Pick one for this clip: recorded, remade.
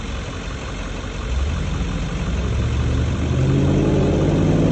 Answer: recorded